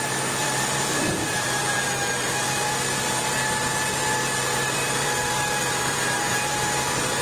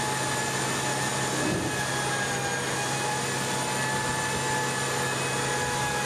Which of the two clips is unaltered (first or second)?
second